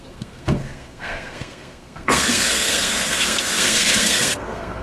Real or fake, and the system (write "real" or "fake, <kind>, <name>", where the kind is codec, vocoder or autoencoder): fake, codec, SNAC